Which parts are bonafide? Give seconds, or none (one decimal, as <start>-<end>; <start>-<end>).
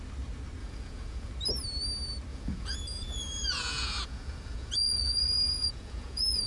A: 0.0-0.6; 1.3-2.3